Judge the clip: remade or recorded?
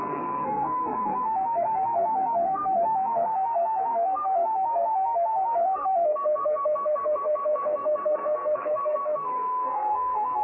remade